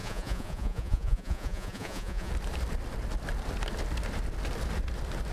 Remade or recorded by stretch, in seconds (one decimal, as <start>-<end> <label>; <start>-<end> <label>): 0.0-2.3 remade; 2.3-5.3 recorded